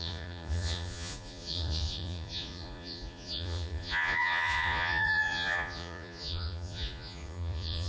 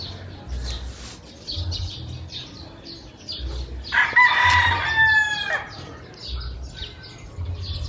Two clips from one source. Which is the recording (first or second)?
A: second